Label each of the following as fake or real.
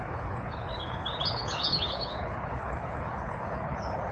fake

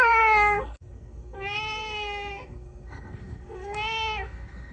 fake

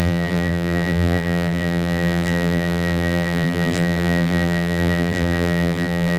fake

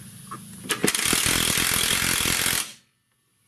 real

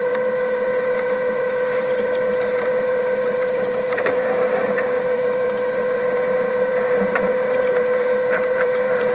fake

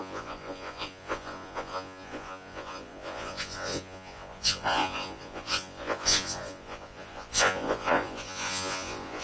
fake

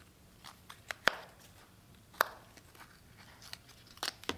real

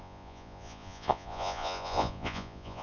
fake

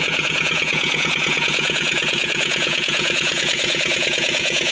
fake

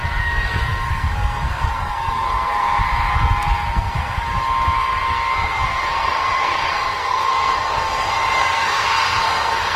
fake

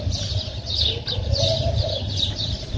real